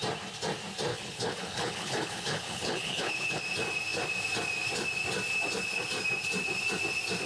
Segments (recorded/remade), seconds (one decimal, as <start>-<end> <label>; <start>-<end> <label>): 0.0-0.9 recorded; 0.9-3.4 remade; 3.4-7.3 recorded